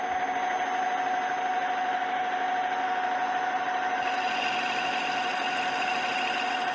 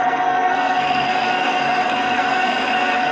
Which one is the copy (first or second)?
second